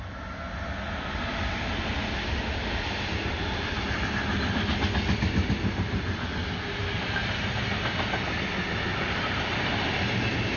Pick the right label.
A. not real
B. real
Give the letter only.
B